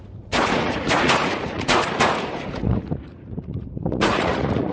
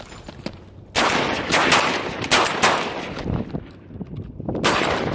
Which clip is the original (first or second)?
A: second